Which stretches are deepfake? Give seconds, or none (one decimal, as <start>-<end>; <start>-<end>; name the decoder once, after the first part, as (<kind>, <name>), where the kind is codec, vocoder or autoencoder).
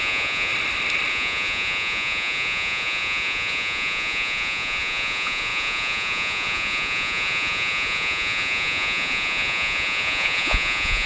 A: 0.0-0.5 (vocoder, Vocos); 1.1-11.1